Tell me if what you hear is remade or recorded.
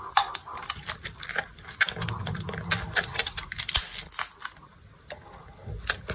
recorded